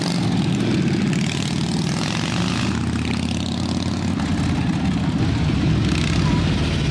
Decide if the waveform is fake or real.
real